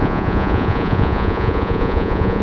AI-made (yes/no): yes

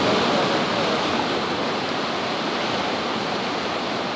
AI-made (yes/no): no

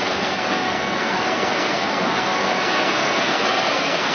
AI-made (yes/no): yes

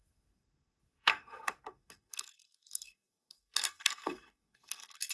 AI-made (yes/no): yes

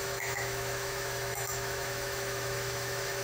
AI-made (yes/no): yes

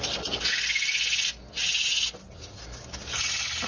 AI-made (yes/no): no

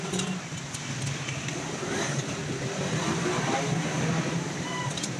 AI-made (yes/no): no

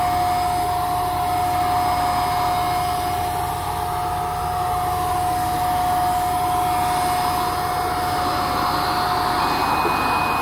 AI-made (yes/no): no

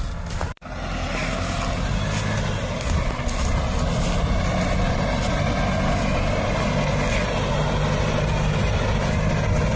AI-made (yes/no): no